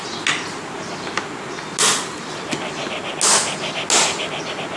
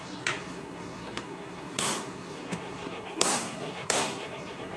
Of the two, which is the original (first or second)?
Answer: first